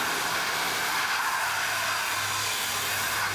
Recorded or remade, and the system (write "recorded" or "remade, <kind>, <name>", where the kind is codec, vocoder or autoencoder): recorded